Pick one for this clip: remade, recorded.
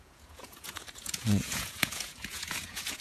remade